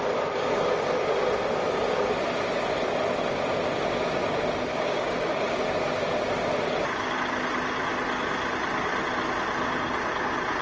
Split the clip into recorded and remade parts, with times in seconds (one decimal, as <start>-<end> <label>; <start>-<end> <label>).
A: 0.0-4.7 recorded; 4.7-5.6 remade; 5.6-10.6 recorded